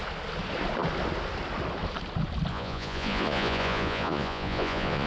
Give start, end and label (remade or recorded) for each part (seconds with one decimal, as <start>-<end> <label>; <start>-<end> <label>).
0.0-2.5 recorded; 2.5-5.1 remade